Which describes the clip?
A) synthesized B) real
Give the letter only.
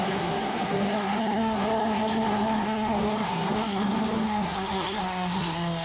A